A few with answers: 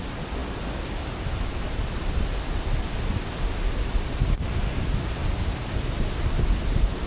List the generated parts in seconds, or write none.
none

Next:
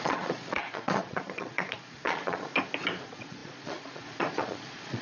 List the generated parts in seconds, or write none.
0.0-2.5; 3.0-5.0

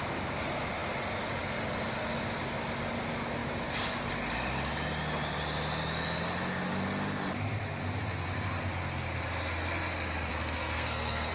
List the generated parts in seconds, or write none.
10.3-11.3

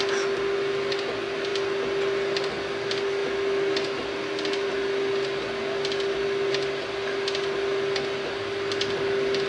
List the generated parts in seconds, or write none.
none

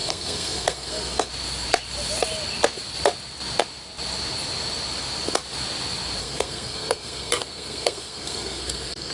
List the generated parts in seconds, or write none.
0.0-1.3; 6.2-9.1